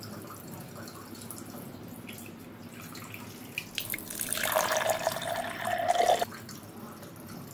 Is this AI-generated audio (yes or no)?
no